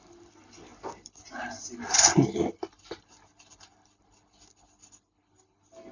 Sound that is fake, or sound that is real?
real